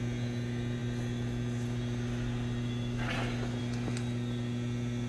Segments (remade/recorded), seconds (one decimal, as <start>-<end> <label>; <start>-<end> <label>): 0.0-5.1 recorded